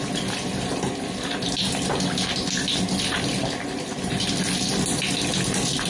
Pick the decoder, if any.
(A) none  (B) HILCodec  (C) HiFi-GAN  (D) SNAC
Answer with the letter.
A